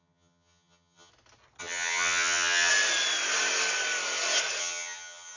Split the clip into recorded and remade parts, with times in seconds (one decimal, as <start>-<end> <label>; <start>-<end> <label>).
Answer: 0.0-1.1 remade; 1.1-1.6 recorded; 1.6-2.7 remade; 2.7-4.6 recorded; 4.6-5.4 remade